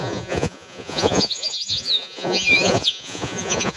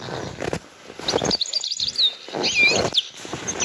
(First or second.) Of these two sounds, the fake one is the first